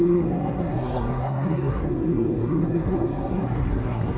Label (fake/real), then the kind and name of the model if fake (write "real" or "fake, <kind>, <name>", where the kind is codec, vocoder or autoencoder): fake, codec, SNAC